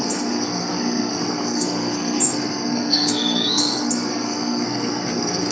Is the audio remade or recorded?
remade